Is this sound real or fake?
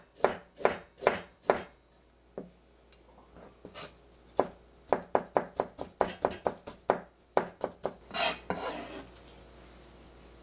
real